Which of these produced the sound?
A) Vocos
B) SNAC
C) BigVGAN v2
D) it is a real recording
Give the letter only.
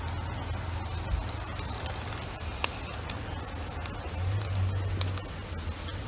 D